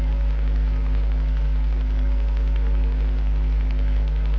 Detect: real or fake fake